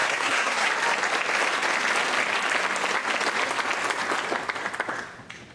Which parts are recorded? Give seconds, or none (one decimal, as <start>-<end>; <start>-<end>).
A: 0.7-5.5